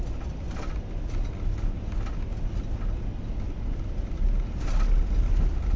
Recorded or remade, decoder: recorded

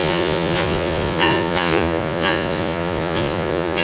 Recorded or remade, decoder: remade, vocoder, Vocos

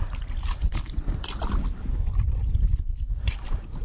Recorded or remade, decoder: remade, vocoder, BigVGAN v2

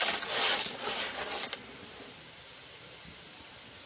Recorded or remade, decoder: recorded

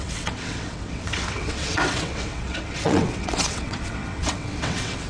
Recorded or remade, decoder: remade, vocoder, WaveNeXt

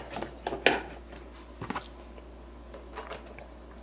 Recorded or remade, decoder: recorded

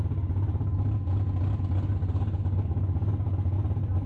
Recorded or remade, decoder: recorded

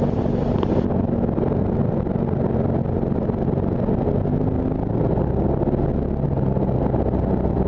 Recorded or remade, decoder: recorded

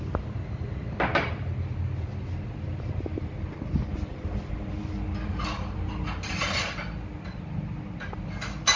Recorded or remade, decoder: recorded